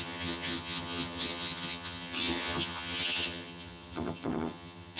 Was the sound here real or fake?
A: fake